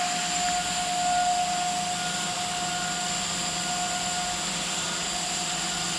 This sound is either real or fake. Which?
real